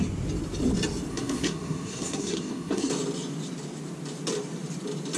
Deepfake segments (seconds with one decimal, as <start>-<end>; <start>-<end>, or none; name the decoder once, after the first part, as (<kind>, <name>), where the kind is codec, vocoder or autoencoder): 1.1-2.9 (codec, SNAC)